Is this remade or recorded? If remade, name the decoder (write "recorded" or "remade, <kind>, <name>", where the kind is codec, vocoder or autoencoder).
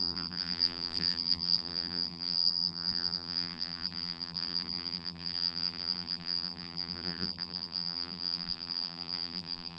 remade, vocoder, BigVGAN v2